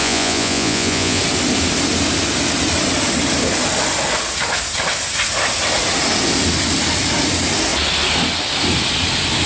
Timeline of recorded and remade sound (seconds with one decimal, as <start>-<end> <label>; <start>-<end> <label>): 0.0-1.2 remade; 1.2-9.5 recorded